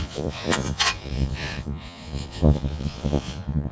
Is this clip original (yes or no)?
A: no